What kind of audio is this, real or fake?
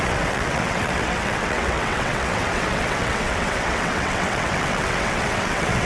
fake